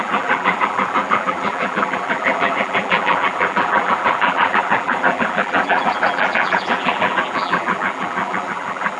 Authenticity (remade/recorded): remade